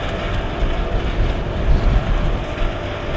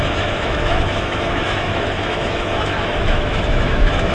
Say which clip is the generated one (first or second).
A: second